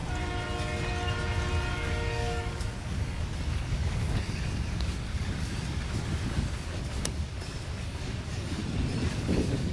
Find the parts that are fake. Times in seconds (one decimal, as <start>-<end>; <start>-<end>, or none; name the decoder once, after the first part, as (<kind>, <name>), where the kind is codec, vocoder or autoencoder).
1.7-8.6 (codec, DAC); 9.1-9.7